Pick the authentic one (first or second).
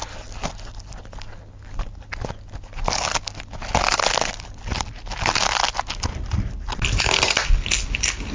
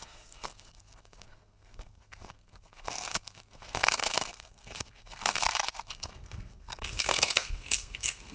first